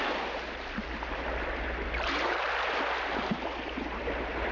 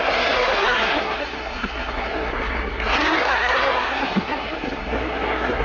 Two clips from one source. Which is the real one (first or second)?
first